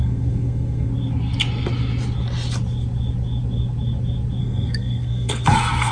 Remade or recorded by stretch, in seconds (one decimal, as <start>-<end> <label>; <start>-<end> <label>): 0.0-0.9 remade; 0.9-4.4 recorded; 4.4-5.9 remade